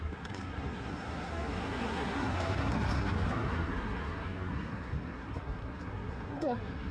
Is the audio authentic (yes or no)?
no